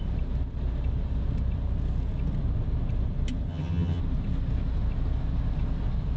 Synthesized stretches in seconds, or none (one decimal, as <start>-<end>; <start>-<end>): 3.5-4.0